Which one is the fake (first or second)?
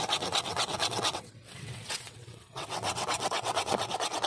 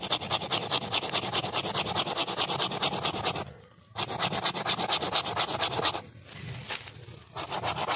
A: first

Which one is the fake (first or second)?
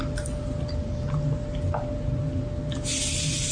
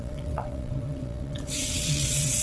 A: second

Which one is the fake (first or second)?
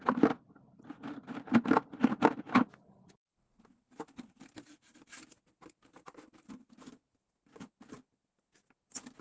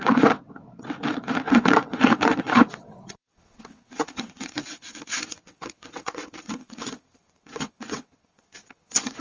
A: second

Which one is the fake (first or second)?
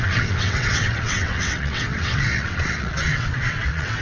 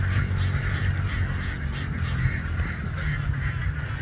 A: first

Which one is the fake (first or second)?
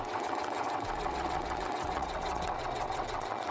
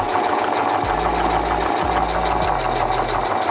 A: first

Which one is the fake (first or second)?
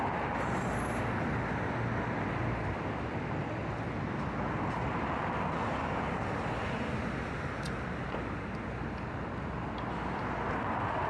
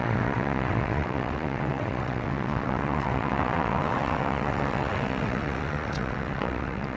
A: second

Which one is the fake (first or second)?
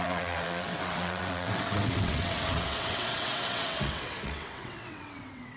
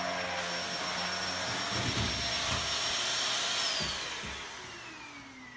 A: first